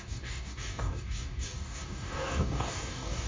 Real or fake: fake